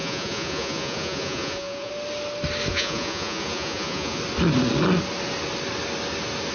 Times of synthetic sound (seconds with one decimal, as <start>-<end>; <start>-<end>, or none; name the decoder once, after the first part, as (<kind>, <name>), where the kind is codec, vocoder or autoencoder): 0.0-1.9 (vocoder, Vocos); 2.7-4.2